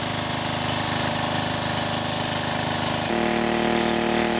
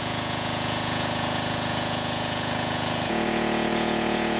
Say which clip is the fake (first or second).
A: second